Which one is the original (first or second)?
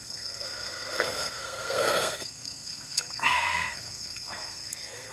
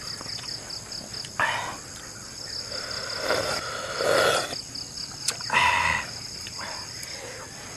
second